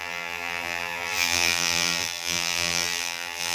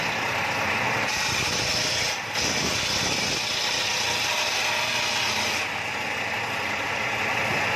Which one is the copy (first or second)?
first